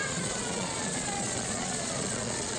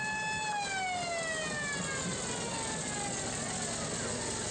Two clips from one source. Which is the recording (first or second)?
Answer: second